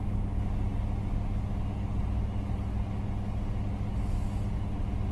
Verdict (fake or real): real